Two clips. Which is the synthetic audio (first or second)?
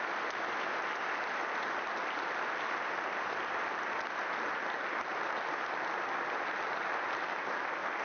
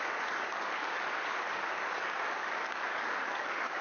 second